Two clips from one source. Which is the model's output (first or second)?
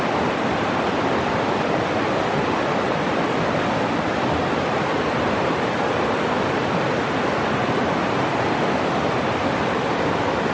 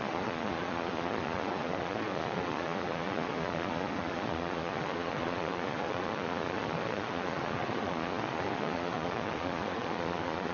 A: second